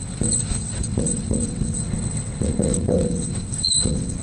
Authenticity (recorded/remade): remade